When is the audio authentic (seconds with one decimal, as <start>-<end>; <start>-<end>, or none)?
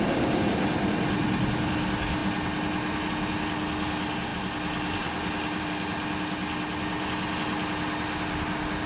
0.0-8.9